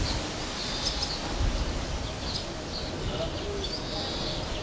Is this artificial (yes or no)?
no